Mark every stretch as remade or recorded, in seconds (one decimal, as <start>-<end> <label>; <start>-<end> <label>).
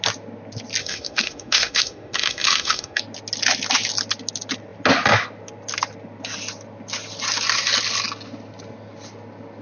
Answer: 0.0-0.8 recorded; 0.8-3.0 remade; 3.0-9.6 recorded